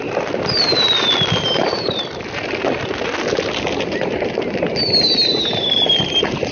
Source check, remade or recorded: recorded